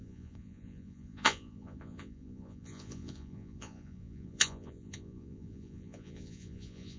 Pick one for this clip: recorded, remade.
remade